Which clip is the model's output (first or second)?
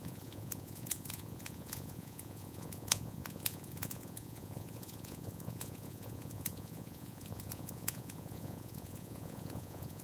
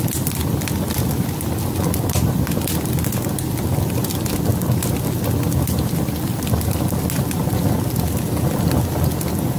first